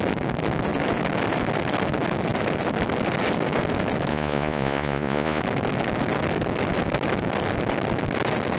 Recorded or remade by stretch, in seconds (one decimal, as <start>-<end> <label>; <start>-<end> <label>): 0.0-4.1 recorded; 4.1-5.4 remade; 5.4-8.6 recorded